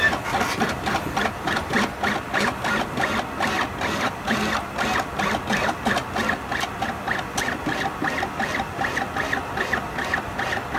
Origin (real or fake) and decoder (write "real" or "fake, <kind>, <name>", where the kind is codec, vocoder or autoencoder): real